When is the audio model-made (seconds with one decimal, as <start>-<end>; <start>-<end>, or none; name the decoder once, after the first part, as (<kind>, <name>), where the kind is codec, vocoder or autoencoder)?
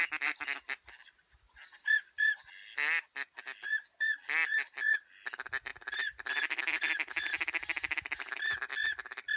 none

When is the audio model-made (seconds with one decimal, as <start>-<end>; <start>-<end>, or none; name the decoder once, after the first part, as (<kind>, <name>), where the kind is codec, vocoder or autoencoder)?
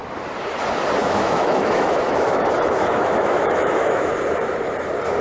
1.0-4.1 (autoencoder, DAC-VAE)